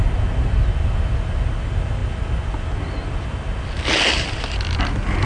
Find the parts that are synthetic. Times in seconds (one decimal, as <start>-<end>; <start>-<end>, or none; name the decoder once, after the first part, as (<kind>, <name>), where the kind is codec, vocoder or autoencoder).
none